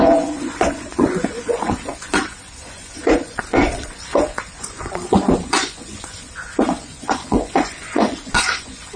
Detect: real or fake fake